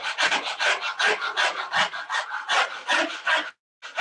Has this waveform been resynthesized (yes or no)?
no